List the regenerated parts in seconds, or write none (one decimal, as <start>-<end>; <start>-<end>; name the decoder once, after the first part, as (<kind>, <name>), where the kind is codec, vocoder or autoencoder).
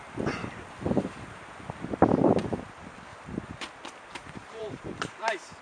0.4-1.5 (vocoder, BigVGAN v2); 3.1-3.6; 4.4-5.1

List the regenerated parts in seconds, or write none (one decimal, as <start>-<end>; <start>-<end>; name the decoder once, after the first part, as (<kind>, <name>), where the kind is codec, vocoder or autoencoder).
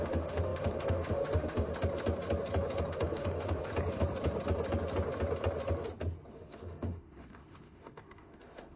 0.0-1.7 (autoencoder, DAC-VAE); 2.9-3.7; 6.3-8.8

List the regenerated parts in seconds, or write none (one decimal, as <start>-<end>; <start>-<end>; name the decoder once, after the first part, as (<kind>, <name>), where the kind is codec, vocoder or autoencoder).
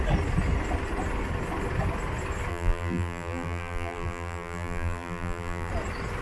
2.5-5.7 (vocoder, BigVGAN v2)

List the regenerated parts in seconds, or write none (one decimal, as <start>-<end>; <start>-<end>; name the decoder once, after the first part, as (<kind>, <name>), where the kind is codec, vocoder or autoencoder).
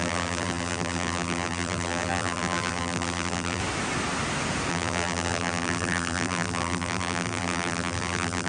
0.0-3.6 (vocoder, BigVGAN v2); 4.7-8.5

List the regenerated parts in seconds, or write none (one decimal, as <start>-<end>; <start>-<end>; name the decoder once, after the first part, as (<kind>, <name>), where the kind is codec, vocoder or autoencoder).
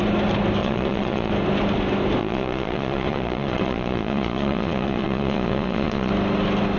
0.6-1.3 (vocoder, Vocos); 2.2-6.1